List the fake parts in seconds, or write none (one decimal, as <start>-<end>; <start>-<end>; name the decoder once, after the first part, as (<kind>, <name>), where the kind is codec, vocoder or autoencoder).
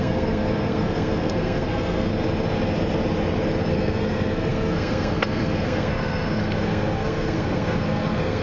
0.0-2.1 (codec, SNAC); 3.7-8.4